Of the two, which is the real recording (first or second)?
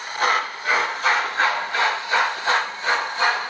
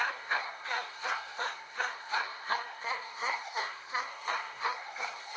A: first